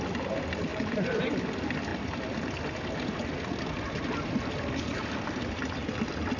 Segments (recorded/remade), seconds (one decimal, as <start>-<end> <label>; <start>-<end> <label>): 0.0-0.7 recorded; 0.7-1.2 remade; 1.2-6.4 recorded